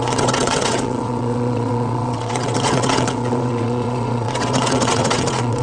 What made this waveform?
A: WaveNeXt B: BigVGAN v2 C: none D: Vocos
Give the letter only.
A